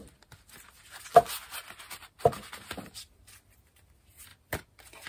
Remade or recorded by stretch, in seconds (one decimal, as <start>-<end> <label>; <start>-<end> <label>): 0.0-5.1 recorded